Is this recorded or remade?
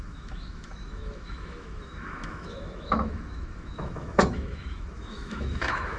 remade